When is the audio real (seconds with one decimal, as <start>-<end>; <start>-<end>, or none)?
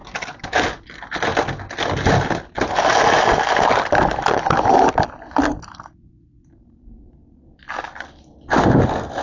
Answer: 0.6-9.2